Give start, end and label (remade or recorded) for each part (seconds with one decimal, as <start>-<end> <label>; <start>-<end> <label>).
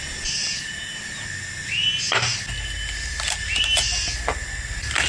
0.0-5.1 recorded